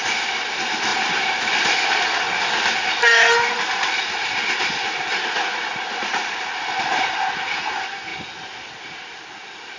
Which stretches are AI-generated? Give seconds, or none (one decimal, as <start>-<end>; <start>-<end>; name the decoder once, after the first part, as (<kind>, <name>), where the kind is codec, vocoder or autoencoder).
none